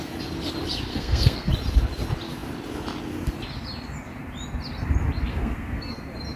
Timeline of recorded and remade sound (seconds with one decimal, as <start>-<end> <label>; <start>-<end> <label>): 0.0-0.9 recorded; 0.9-1.5 remade; 1.5-5.3 recorded; 5.3-6.0 remade; 6.0-6.4 recorded